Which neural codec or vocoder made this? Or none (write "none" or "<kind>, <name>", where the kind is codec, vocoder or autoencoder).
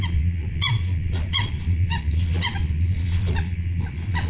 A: vocoder, Vocos